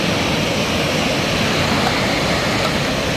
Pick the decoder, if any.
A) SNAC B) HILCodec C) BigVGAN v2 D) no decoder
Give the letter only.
D